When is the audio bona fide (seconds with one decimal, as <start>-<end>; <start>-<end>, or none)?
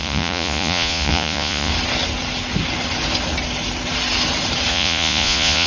1.7-4.7